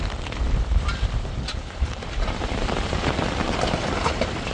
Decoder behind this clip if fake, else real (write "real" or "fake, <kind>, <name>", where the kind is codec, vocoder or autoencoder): fake, vocoder, BigVGAN v2